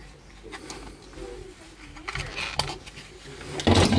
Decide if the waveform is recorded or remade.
recorded